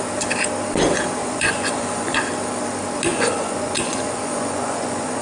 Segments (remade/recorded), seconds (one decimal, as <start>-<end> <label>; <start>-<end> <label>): 0.0-1.2 recorded; 1.2-2.2 remade; 2.2-3.1 recorded; 3.1-5.2 remade